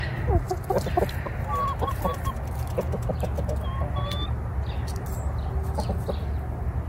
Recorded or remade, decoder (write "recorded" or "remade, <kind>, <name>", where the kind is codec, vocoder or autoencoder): recorded